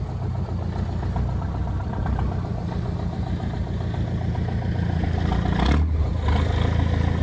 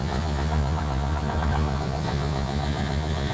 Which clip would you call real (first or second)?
first